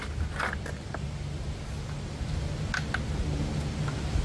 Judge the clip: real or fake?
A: real